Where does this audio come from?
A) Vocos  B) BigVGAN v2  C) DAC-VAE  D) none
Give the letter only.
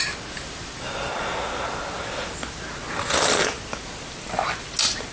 D